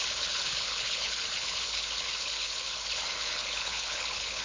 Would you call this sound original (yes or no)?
no